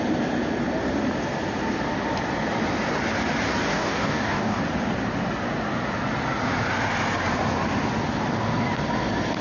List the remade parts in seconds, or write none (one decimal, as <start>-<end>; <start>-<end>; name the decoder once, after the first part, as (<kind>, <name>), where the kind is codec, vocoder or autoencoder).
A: 3.7-4.6 (codec, DAC)